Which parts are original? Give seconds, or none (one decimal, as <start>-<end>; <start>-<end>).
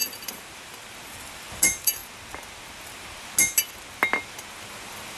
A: 2.0-4.5